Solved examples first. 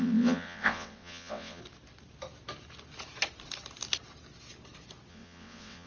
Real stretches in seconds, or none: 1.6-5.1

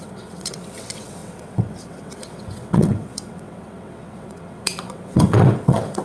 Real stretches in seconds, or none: none

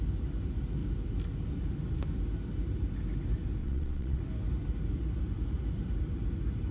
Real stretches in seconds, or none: 0.0-3.6; 4.2-6.7

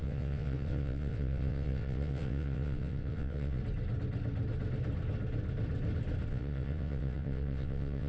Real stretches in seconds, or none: 3.6-6.3

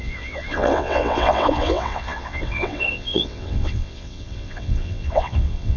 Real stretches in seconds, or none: none